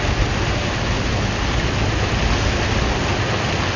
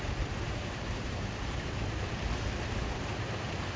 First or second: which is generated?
second